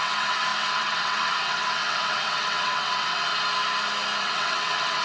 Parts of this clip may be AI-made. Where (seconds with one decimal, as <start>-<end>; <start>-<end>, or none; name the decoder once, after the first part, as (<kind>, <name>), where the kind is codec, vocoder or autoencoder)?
0.0-3.3 (vocoder, WaveNeXt); 4.2-5.0